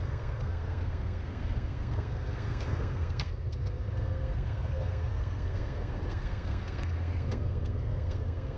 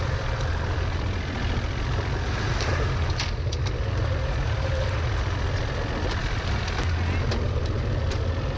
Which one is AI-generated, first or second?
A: first